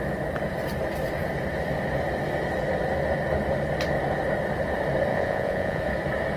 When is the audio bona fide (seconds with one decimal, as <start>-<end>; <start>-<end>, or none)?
0.0-5.1; 5.8-6.4